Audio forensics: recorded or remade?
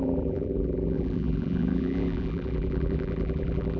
remade